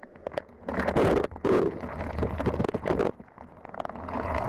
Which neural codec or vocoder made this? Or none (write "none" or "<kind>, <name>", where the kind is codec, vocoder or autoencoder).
vocoder, Vocos